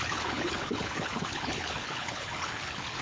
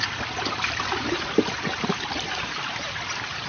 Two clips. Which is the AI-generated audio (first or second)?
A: first